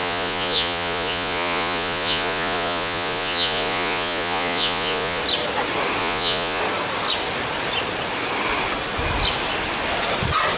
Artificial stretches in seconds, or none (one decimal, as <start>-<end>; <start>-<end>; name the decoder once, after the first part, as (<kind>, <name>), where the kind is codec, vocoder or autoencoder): 0.0-5.2 (vocoder, Vocos); 6.0-6.6